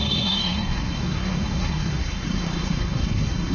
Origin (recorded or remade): remade